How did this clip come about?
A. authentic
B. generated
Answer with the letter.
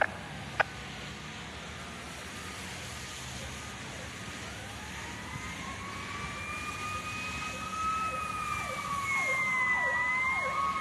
A